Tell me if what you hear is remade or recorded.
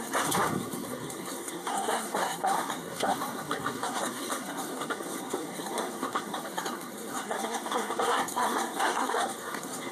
remade